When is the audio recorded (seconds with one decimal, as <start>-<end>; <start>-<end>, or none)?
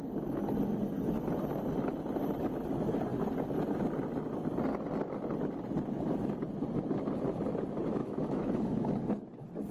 0.0-8.0; 8.9-9.7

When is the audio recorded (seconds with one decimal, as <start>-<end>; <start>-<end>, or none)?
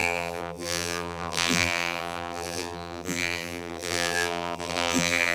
none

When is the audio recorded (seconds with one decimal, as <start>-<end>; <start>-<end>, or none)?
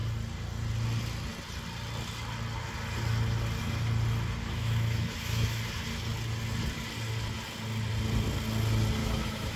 0.0-4.4; 5.6-9.0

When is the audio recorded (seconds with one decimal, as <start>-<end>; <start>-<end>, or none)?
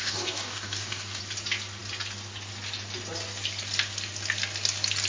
1.2-5.1